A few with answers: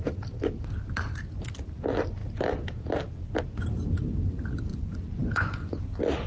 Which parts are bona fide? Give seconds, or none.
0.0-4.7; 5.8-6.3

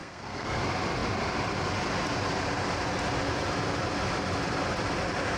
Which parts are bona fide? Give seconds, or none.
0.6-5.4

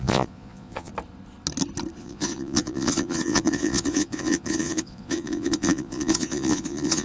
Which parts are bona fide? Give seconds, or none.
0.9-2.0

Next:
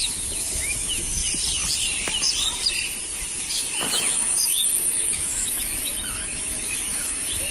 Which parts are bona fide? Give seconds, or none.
1.2-3.5